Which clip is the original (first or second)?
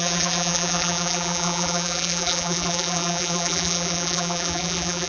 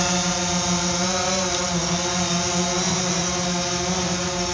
second